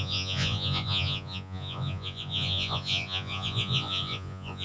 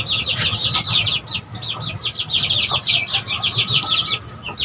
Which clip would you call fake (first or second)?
first